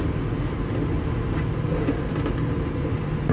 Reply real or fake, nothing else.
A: real